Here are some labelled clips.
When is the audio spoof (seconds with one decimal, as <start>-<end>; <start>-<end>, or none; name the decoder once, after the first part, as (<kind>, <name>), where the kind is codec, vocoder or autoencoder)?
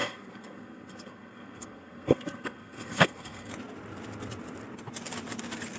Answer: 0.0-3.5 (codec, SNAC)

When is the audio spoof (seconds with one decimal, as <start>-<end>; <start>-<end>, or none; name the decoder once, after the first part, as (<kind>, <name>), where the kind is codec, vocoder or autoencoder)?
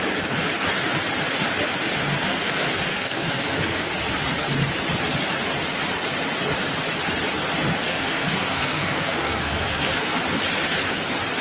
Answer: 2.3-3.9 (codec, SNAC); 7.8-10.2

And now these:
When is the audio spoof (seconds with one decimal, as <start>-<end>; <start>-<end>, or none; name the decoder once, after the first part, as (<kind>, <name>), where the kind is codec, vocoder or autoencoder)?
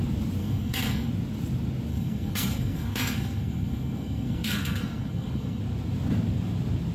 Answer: 0.4-1.1 (codec, SNAC); 1.9-5.6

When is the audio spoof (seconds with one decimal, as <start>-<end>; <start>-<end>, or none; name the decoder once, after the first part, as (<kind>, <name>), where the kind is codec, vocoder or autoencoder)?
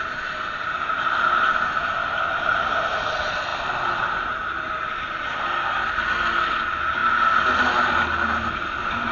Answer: none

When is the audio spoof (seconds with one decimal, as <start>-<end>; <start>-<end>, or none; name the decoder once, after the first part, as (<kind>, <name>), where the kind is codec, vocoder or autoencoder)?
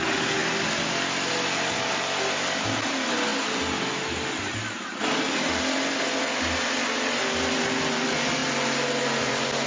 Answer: none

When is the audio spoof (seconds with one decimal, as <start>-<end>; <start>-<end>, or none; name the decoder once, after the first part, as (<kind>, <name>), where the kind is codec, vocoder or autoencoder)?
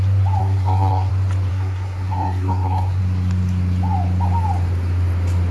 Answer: 0.4-1.1 (codec, SNAC); 1.5-3.0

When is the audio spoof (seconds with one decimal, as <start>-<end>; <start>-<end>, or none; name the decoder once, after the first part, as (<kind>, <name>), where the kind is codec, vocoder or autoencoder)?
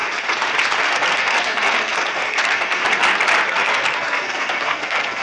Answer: 0.8-2.8 (codec, SNAC); 3.5-5.2